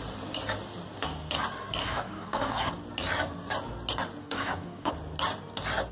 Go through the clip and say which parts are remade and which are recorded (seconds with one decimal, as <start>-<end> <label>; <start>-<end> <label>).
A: 0.0-1.8 recorded; 1.8-2.7 remade; 2.7-4.2 recorded; 4.2-4.9 remade; 4.9-5.9 recorded